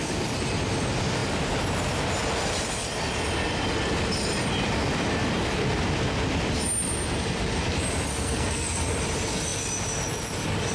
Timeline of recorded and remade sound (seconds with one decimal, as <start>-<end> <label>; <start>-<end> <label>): 0.0-8.1 recorded; 8.1-8.9 remade; 8.9-10.7 recorded